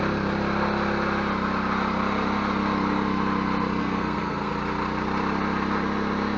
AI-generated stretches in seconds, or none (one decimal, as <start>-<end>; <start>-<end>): 3.8-4.5

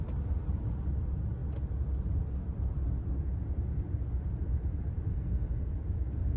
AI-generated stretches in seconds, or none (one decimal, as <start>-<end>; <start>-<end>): 5.1-5.7

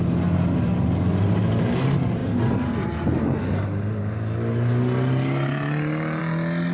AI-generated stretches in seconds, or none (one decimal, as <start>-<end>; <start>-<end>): none

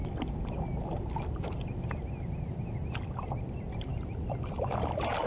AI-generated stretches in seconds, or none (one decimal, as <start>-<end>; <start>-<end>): none

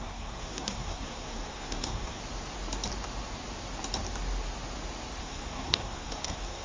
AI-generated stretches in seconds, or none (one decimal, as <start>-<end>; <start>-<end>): 0.0-2.2; 5.2-6.6